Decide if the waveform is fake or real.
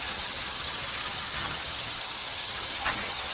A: fake